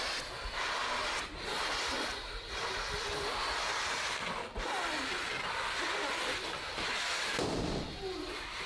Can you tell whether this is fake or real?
real